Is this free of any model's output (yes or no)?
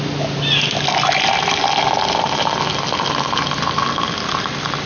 yes